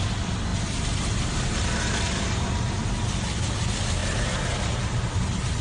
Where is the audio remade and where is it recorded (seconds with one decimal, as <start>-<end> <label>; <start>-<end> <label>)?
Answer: 0.0-5.6 recorded